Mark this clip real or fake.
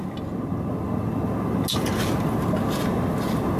real